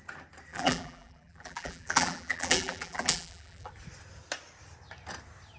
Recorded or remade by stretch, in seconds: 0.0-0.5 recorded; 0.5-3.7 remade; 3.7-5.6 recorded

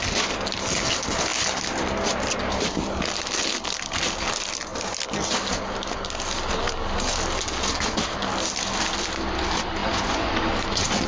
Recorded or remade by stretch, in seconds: 0.0-9.8 recorded; 9.8-10.3 remade; 10.3-11.1 recorded

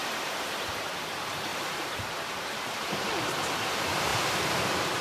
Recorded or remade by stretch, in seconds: 0.0-5.0 remade

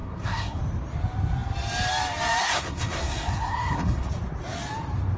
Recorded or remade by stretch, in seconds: 0.0-0.6 remade; 0.6-2.4 recorded; 2.4-4.1 remade; 4.1-5.2 recorded

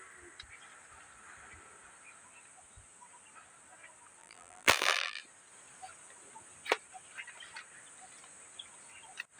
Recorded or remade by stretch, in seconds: 0.0-4.2 recorded; 4.2-5.2 remade; 5.2-9.4 recorded